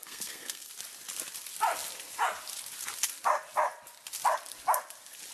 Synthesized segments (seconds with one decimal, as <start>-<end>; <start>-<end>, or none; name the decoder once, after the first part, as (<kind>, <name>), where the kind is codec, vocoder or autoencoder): 0.0-0.7 (codec, SNAC)